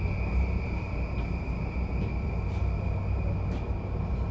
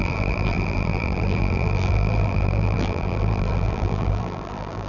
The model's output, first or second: second